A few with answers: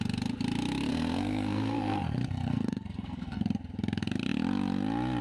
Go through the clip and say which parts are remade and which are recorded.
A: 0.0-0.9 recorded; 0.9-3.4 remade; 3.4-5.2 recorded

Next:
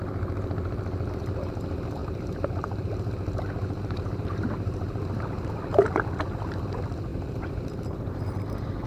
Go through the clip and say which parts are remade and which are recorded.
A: 0.0-2.0 recorded; 2.0-5.6 remade; 5.6-7.1 recorded; 7.1-8.4 remade; 8.4-8.9 recorded

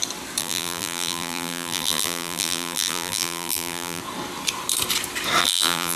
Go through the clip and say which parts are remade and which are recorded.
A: 0.0-0.4 recorded; 0.4-4.0 remade; 4.0-5.4 recorded; 5.4-6.0 remade

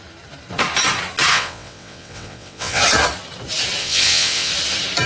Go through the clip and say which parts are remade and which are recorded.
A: 0.0-1.3 recorded; 1.3-2.8 remade; 2.8-3.8 recorded; 3.8-4.5 remade; 4.5-5.1 recorded

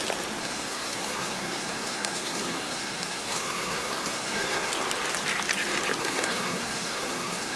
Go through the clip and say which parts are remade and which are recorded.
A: 0.0-0.4 recorded; 0.4-4.7 remade; 4.7-6.0 recorded; 6.0-7.6 remade

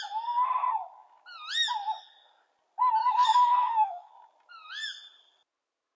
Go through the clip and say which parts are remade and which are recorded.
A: 0.0-3.0 recorded; 3.0-4.1 remade; 4.1-6.0 recorded

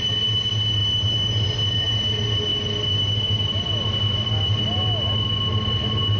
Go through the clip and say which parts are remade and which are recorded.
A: 0.0-6.2 recorded